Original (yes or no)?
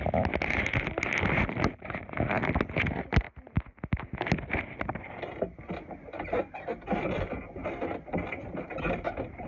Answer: yes